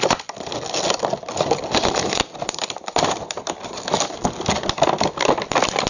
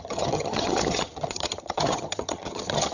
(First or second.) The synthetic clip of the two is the second